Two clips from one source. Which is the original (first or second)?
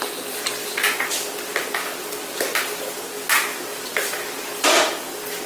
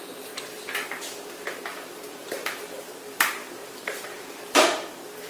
first